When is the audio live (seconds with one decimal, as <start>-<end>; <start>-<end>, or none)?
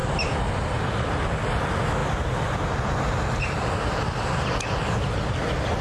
0.0-5.8